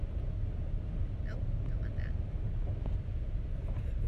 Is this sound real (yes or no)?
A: yes